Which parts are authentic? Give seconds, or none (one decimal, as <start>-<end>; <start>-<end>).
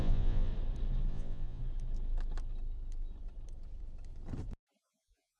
0.5-1.1; 1.6-4.8